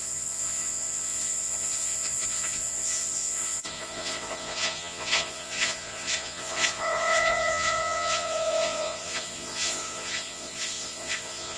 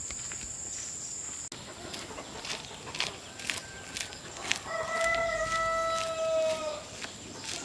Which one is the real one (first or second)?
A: second